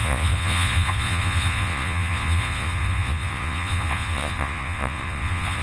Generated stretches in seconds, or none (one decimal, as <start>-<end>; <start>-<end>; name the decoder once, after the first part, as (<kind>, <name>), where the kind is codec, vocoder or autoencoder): 0.0-5.6 (vocoder, Vocos)